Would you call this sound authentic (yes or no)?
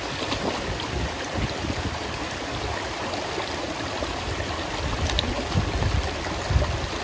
yes